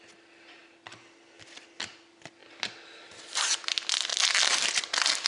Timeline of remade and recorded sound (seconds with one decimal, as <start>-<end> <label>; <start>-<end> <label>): 0.0-5.3 recorded